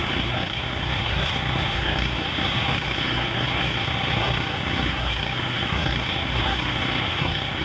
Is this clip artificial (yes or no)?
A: yes